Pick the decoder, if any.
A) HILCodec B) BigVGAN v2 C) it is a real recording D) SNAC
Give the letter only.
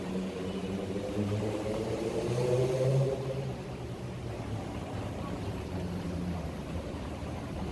B